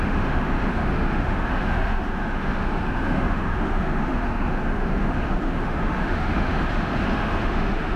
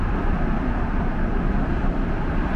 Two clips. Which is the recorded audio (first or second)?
second